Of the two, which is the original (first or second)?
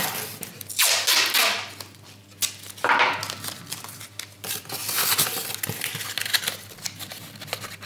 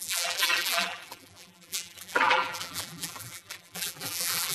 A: first